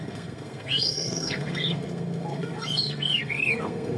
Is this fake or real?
fake